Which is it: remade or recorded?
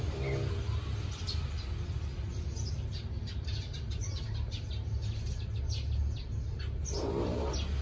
recorded